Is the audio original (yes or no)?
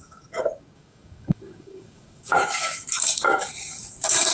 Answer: no